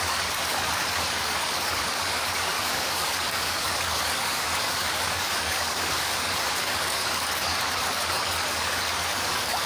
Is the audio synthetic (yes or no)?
yes